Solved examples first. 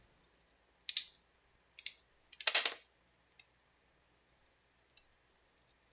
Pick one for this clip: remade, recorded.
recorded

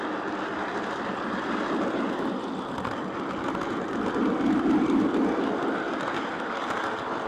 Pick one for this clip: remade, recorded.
recorded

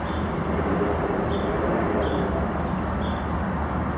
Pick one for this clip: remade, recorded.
recorded